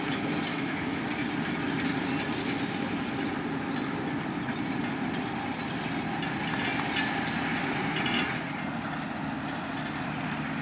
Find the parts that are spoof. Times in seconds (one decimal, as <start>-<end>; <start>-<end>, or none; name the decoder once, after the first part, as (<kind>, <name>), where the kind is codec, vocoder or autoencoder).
0.5-1.0 (autoencoder, DAC-VAE)

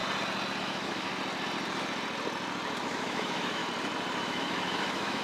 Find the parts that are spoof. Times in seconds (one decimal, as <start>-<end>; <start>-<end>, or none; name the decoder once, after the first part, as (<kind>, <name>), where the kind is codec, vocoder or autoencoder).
0.6-1.1 (autoencoder, DAC-VAE); 2.8-3.6; 4.2-5.2

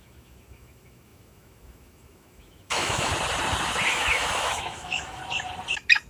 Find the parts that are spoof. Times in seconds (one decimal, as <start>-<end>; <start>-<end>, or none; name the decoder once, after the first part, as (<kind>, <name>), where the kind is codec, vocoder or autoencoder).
0.0-3.1 (autoencoder, DAC-VAE); 3.9-5.2

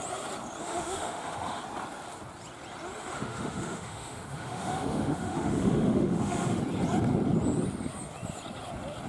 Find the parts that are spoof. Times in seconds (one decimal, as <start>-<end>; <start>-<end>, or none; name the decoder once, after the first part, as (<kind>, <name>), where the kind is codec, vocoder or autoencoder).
0.6-1.6 (autoencoder, DAC-VAE); 3.1-6.6

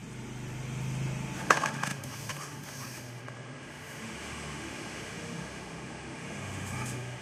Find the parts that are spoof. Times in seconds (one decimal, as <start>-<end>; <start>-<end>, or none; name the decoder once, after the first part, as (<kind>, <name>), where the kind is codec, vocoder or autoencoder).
1.4-7.2 (autoencoder, DAC-VAE)